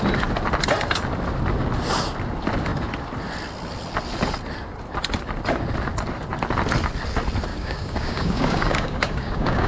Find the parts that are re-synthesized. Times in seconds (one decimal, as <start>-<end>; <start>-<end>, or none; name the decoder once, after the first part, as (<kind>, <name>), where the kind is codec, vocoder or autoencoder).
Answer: 7.5-9.7 (codec, DAC)